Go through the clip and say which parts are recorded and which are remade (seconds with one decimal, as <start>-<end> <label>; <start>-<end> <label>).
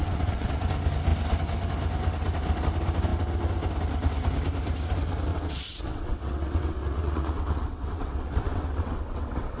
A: 0.0-0.6 remade; 0.6-5.3 recorded; 5.3-9.6 remade